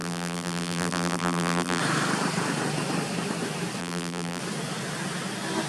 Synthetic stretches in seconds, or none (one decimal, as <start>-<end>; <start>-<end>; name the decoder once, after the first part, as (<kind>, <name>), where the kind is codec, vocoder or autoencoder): 0.0-1.8 (vocoder, BigVGAN v2); 3.8-4.4